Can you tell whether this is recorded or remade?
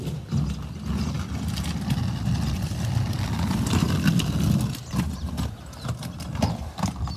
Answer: recorded